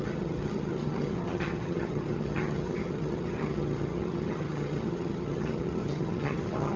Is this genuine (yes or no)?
no